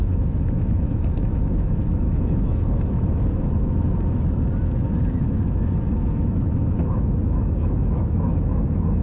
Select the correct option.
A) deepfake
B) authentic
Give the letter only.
A